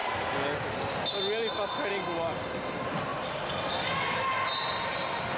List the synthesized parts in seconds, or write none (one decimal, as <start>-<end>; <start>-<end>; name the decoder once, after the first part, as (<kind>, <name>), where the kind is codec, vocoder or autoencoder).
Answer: none